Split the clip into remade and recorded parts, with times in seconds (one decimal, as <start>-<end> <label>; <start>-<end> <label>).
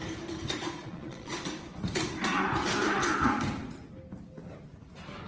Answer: 0.0-0.6 recorded; 0.6-1.4 remade; 1.4-5.3 recorded